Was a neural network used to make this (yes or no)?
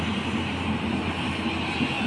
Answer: no